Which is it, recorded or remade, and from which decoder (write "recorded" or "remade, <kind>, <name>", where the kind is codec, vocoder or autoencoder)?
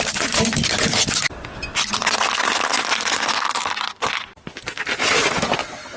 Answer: recorded